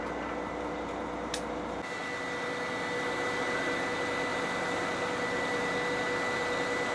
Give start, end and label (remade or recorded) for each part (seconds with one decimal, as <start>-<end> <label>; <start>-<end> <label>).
0.0-4.3 recorded; 4.3-5.8 remade; 5.8-6.9 recorded